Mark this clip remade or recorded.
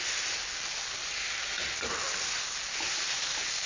recorded